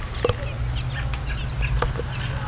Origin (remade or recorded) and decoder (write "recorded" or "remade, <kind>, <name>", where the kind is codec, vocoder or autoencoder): recorded